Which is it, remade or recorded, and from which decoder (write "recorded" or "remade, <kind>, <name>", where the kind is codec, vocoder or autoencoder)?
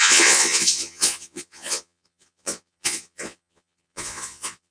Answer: remade, vocoder, Vocos